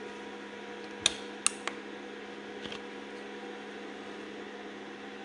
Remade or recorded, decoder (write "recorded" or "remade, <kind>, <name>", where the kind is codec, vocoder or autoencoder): recorded